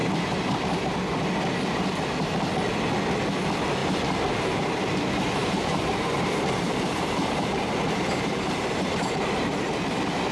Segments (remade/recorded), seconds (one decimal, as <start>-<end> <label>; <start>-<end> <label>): 0.0-3.8 recorded; 3.8-4.8 remade; 4.8-5.4 recorded; 5.4-9.8 remade; 9.8-10.3 recorded